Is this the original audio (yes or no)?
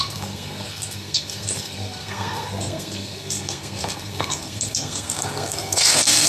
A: no